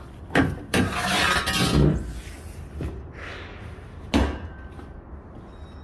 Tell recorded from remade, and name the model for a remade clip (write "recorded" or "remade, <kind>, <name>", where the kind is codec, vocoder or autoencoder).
recorded